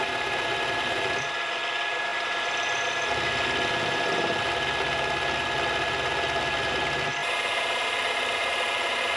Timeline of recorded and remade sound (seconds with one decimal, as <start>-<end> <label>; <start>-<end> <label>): 0.0-9.2 recorded